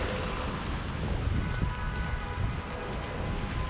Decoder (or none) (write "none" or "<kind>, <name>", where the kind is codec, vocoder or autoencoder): none